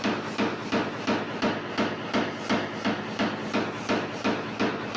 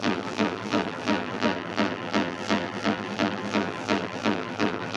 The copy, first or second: second